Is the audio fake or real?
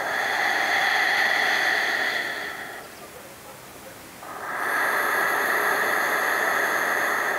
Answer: real